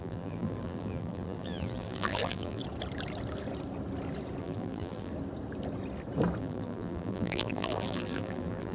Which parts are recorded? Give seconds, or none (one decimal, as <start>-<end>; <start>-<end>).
2.6-4.4; 5.1-6.4